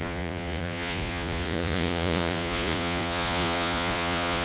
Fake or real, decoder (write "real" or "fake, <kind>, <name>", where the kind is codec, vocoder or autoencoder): fake, vocoder, Vocos